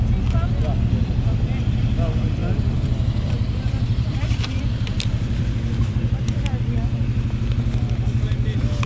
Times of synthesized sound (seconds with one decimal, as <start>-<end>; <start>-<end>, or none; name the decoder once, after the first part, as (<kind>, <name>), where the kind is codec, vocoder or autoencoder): 2.4-6.6 (vocoder, BigVGAN v2)